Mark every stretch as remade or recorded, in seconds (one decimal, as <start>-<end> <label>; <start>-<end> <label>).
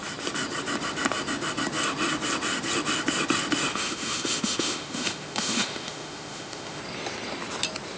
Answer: 0.0-3.7 recorded; 3.7-6.8 remade; 6.8-8.0 recorded